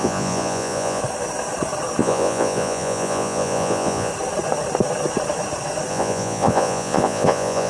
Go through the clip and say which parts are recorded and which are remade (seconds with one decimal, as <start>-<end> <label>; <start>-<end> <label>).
0.0-1.0 remade; 1.0-2.0 recorded; 2.0-4.1 remade; 4.1-5.9 recorded; 5.9-7.7 remade